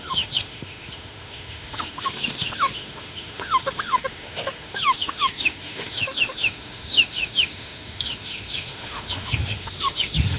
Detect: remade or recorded remade